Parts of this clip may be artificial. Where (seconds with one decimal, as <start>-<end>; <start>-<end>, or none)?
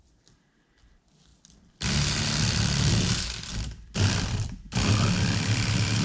0.0-6.0